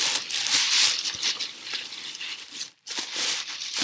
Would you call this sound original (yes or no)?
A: no